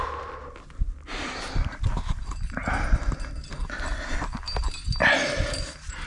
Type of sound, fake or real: real